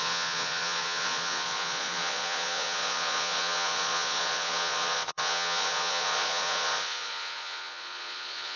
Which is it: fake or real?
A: fake